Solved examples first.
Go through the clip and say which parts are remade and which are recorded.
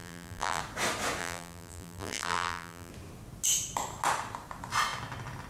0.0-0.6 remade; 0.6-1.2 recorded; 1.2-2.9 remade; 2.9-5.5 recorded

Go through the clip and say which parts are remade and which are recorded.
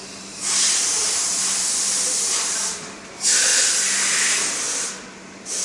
0.0-3.5 remade; 3.5-4.6 recorded; 4.6-5.6 remade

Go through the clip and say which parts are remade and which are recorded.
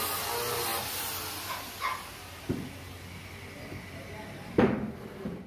0.0-5.5 recorded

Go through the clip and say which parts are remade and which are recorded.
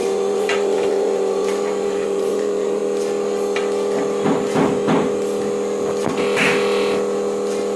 0.0-2.8 remade; 2.8-7.8 recorded